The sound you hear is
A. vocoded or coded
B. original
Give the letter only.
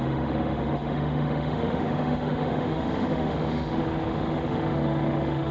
A